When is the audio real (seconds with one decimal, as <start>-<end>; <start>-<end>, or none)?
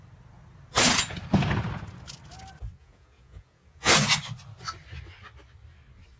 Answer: 0.0-2.8; 3.9-6.2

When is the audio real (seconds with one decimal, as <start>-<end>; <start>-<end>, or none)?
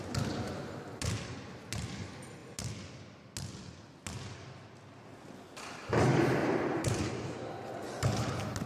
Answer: 0.0-6.4; 7.5-8.7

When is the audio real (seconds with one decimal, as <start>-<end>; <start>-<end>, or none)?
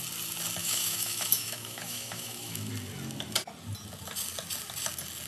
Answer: 0.0-0.6; 2.7-5.3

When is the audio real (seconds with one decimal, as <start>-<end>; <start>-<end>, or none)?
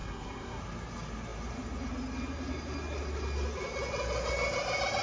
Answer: 0.6-5.0